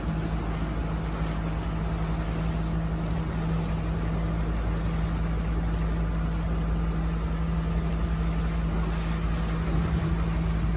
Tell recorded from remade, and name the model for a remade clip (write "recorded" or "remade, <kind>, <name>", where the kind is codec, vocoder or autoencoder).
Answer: recorded